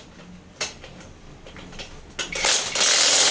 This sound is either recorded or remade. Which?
recorded